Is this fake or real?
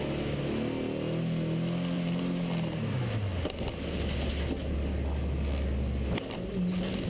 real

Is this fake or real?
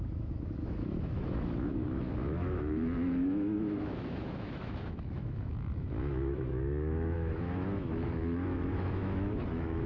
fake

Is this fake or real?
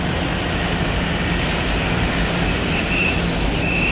real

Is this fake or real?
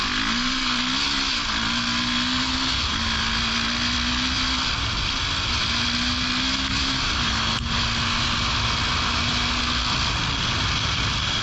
real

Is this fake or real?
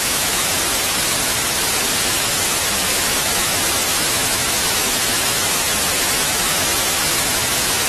fake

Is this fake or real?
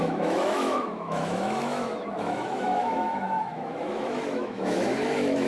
fake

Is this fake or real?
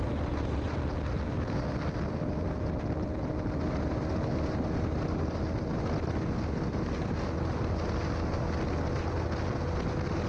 real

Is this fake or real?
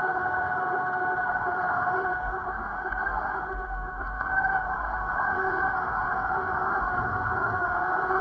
fake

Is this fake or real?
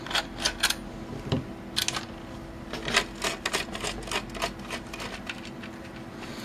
real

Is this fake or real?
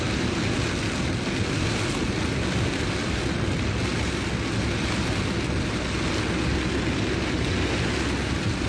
real